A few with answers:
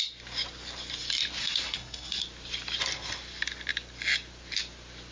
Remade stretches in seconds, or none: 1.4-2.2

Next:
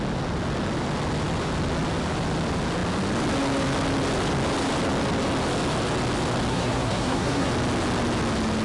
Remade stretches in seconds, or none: 6.5-7.5

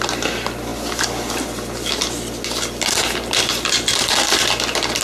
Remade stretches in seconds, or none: none

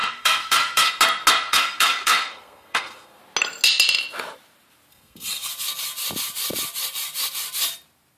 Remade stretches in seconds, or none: 0.0-0.9; 1.4-3.2; 4.9-5.5

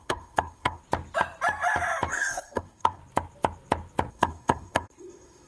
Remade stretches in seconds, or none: 0.0-0.8; 2.1-3.0; 4.1-5.5